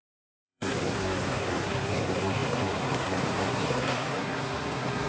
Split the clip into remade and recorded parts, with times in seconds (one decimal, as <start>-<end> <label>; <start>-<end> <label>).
0.0-5.1 remade